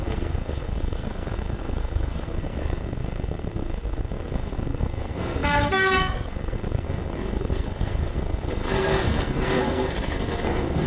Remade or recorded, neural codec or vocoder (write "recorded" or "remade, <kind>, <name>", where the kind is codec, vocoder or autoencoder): remade, codec, SNAC